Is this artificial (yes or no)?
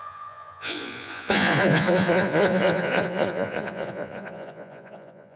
yes